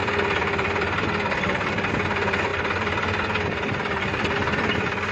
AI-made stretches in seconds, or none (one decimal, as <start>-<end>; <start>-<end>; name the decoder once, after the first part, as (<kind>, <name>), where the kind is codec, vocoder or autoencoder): 0.0-1.9 (vocoder, BigVGAN v2); 2.5-5.1